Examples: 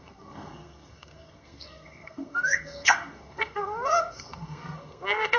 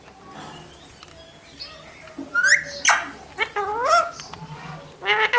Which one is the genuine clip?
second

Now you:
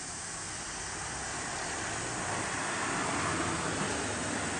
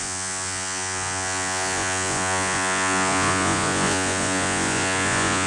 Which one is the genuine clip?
first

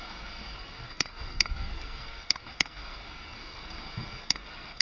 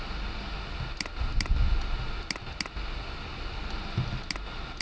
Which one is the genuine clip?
second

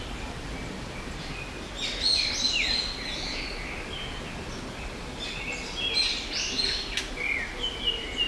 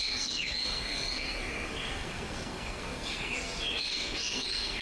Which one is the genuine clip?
first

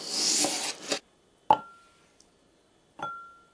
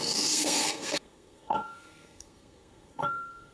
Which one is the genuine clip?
first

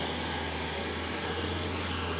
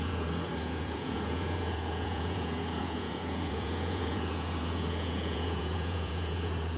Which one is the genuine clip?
first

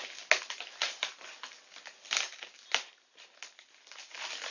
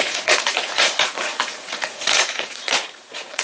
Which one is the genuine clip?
first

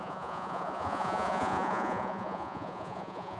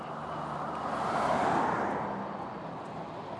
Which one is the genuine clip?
second